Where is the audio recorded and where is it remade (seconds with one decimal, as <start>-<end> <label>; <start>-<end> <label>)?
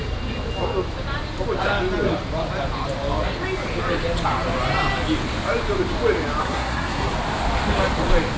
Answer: 0.0-6.4 recorded; 6.4-7.1 remade; 7.1-8.4 recorded